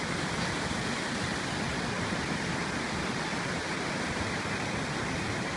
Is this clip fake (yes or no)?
yes